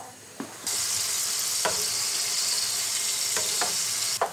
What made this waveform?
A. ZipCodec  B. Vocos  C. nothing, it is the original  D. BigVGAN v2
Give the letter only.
C